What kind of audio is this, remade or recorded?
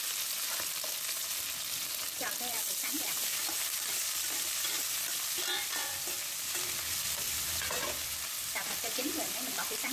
recorded